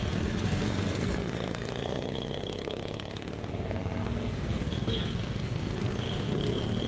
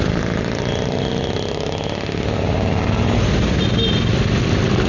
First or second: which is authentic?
second